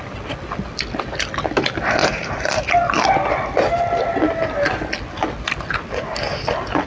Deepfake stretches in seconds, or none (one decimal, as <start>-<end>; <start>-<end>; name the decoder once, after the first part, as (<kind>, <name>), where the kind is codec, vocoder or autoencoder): 2.0-2.7 (vocoder, BigVGAN v2)